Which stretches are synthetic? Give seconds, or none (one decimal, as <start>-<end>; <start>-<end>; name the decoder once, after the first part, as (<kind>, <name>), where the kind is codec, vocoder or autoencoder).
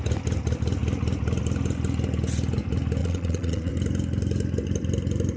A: 3.0-3.7 (vocoder, Vocos)